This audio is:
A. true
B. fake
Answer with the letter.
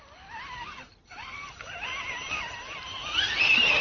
A